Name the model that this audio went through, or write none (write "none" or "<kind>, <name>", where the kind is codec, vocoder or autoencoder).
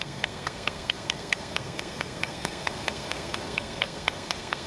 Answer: codec, SNAC